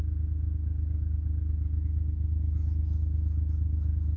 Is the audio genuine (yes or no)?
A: yes